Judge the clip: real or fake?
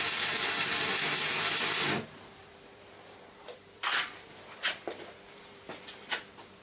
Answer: fake